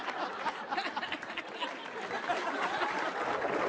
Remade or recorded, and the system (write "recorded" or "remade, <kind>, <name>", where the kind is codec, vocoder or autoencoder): recorded